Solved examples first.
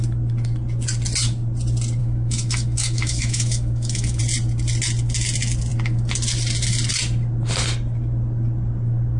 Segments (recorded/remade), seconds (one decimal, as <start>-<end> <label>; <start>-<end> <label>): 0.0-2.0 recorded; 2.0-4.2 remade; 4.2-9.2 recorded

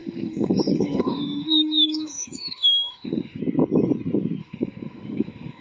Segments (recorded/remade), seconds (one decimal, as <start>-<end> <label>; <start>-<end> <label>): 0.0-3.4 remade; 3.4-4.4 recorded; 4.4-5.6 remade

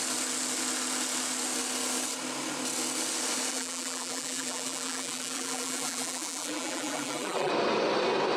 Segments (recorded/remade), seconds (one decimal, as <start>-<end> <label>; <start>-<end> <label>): 0.0-3.5 recorded; 3.5-7.5 remade; 7.5-8.4 recorded